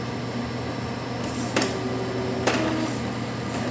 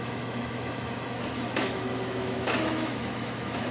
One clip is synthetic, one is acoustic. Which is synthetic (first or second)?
second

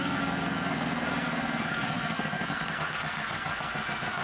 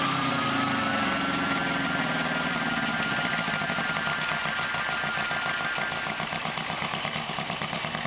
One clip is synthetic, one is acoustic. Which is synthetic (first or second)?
first